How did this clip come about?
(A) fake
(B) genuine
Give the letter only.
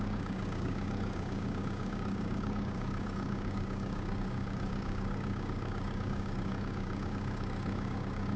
A